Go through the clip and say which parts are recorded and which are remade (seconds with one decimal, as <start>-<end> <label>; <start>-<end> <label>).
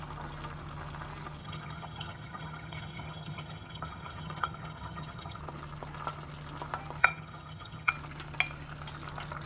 0.0-1.4 recorded; 1.4-5.4 remade; 5.4-7.0 recorded; 7.0-7.9 remade; 7.9-9.5 recorded